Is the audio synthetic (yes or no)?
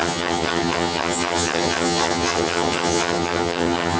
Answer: yes